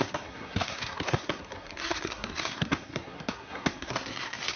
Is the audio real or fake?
fake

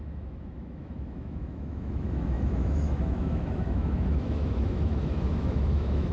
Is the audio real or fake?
fake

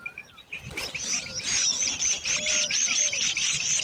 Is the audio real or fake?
fake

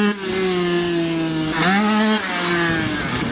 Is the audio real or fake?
real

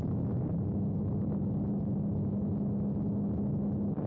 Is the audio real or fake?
real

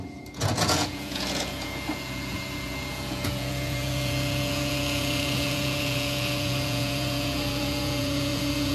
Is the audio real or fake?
fake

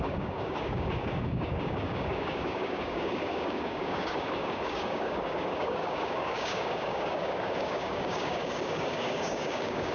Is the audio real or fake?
fake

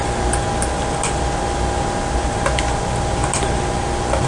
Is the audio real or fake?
real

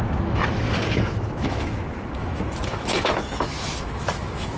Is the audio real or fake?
fake